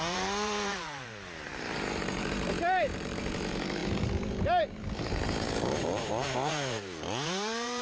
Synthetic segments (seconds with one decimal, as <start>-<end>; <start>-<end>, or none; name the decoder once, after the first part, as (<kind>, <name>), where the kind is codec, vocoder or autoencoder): 0.0-7.8 (vocoder, BigVGAN v2)